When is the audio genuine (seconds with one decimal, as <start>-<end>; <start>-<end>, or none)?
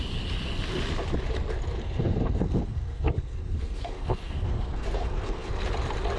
0.0-1.8; 5.5-6.2